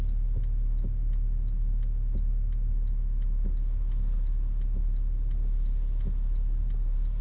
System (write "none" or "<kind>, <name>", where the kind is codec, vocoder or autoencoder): none